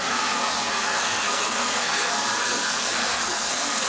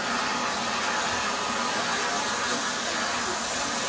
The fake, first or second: first